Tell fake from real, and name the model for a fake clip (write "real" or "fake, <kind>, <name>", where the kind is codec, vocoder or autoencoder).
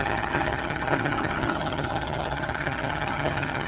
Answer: fake, vocoder, HiFi-GAN